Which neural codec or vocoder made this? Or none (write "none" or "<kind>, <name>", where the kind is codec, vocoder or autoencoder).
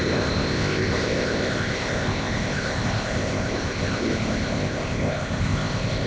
codec, ZipCodec